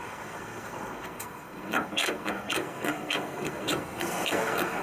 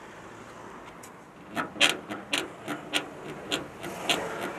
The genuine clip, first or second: second